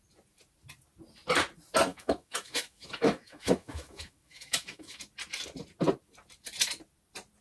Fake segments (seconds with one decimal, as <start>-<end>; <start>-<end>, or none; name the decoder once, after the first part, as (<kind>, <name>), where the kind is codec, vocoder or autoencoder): 1.9-5.0 (autoencoder, DAC-VAE)